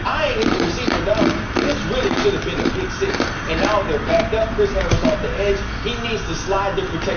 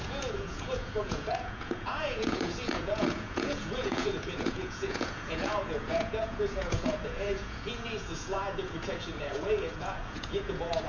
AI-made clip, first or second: second